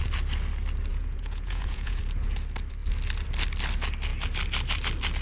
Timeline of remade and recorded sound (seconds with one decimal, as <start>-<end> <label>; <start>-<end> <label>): 0.0-0.9 recorded; 0.9-2.0 remade; 2.0-5.2 recorded

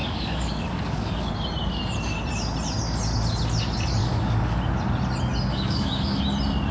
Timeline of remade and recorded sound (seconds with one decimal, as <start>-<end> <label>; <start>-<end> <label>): 0.0-1.3 remade; 1.3-4.0 recorded; 4.0-4.6 remade; 4.6-5.5 recorded; 5.5-6.2 remade; 6.2-6.7 recorded

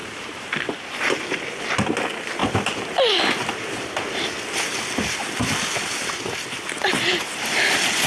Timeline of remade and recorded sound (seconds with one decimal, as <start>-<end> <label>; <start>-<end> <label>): 0.0-1.0 remade; 1.0-8.1 recorded

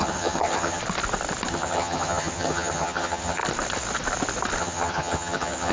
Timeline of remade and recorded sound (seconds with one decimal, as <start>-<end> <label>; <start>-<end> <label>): 0.0-0.8 remade; 0.8-1.5 recorded; 1.5-3.4 remade; 3.4-4.6 recorded; 4.6-5.7 remade